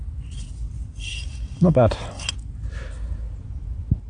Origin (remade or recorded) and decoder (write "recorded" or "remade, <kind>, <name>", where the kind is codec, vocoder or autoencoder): recorded